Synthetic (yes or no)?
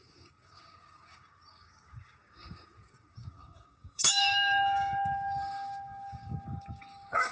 yes